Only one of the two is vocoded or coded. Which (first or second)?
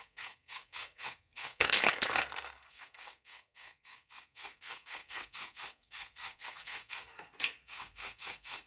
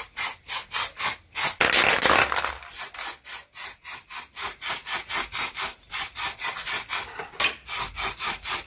first